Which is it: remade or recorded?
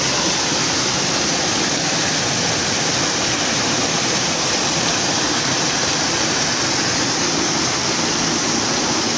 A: recorded